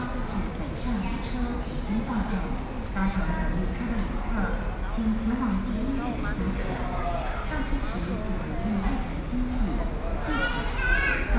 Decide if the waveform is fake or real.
real